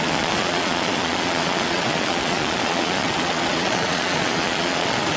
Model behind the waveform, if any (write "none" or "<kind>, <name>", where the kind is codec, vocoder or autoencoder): vocoder, Vocos